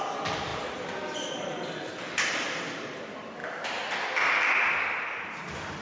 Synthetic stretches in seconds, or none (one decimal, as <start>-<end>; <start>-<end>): none